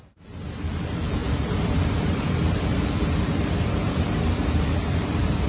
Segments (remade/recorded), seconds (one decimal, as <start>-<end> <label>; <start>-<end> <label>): 0.0-5.5 remade